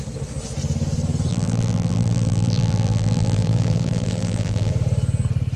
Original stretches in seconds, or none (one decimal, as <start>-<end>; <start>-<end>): 0.0-1.3; 4.7-5.6